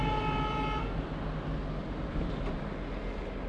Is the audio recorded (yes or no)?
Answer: yes